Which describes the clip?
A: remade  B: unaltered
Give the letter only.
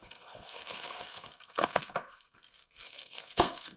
A